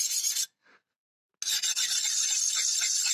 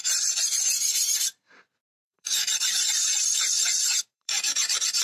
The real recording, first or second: first